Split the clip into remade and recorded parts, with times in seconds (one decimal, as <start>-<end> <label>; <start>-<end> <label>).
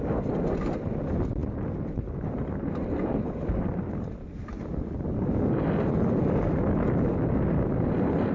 0.0-8.3 recorded